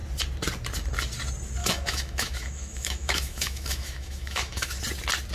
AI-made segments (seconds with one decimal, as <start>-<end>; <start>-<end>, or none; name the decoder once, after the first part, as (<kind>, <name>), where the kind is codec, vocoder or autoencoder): 1.6-4.8 (autoencoder, DAC-VAE)